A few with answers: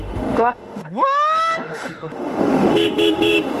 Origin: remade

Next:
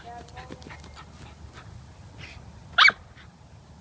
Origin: recorded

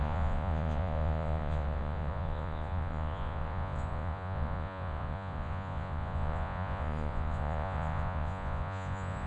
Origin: remade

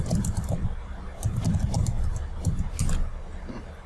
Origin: recorded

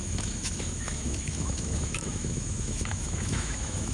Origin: remade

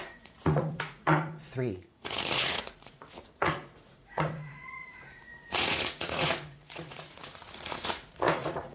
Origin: remade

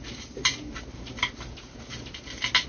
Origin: recorded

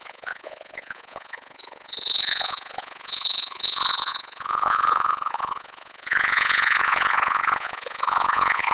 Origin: remade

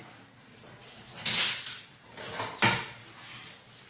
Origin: recorded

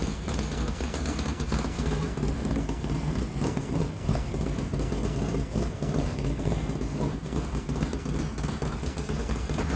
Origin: remade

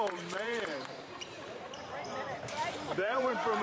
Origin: remade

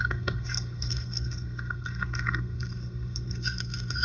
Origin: remade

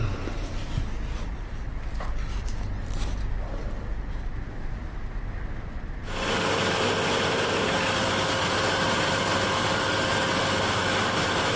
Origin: recorded